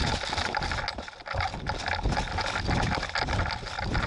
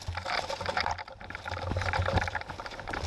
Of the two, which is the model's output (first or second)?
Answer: second